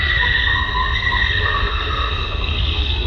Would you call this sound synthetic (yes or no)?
yes